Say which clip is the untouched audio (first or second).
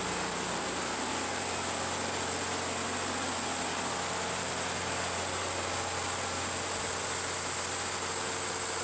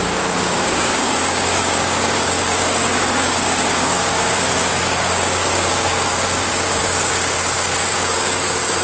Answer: first